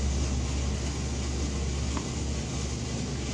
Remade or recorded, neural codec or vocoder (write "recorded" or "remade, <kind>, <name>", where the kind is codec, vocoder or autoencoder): recorded